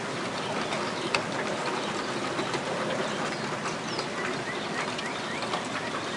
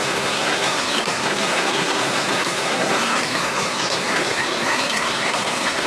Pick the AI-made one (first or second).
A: second